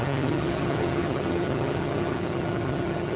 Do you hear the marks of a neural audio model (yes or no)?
yes